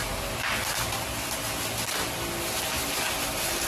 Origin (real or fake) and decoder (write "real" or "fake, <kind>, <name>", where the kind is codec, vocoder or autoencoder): real